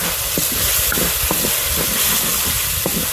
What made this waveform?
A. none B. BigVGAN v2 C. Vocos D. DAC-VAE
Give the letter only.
A